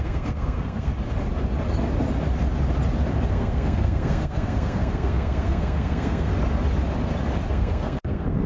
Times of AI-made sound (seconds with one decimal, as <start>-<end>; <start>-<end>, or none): 0.0-0.9; 3.3-6.3; 7.5-8.5